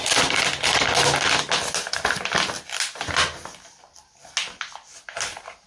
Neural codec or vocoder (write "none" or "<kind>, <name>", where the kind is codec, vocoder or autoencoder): none